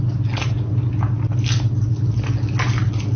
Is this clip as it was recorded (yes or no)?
yes